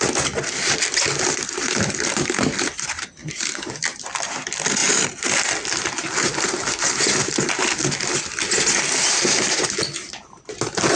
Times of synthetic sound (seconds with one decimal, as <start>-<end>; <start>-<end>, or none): 3.2-3.8